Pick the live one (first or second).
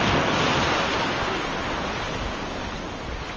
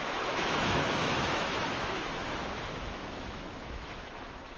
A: first